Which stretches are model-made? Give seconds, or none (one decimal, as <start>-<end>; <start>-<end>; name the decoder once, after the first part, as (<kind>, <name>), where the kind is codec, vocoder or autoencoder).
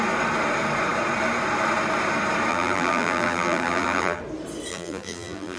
2.5-4.2 (vocoder, BigVGAN v2); 4.7-5.6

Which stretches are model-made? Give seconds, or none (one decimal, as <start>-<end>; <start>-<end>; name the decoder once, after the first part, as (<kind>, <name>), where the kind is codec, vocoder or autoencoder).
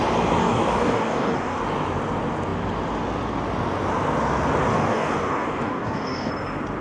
0.4-1.6 (codec, DAC); 4.7-6.3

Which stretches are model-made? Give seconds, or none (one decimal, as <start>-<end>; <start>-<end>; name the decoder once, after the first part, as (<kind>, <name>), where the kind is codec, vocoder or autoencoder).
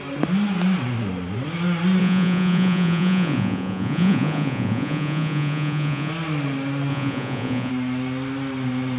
2.0-6.1 (vocoder, Vocos); 6.9-7.7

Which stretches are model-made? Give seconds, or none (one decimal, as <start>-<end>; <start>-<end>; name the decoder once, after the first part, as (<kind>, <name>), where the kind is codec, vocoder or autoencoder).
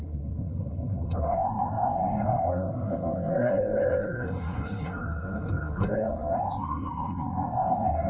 0.0-8.1 (codec, SNAC)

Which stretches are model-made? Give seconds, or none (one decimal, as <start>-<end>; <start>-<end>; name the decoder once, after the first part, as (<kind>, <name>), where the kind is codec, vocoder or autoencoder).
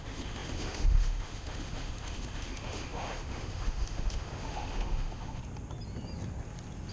0.0-5.4 (autoencoder, DAC-VAE)